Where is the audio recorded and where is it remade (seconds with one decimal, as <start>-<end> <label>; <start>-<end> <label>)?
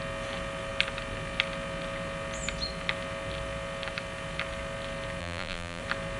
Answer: 0.0-5.2 recorded; 5.2-5.8 remade; 5.8-6.2 recorded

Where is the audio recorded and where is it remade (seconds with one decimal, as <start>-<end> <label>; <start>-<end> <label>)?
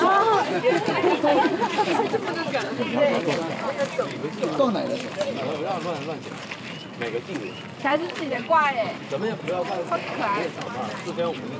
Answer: 0.0-4.2 remade; 4.2-7.3 recorded; 7.3-11.6 remade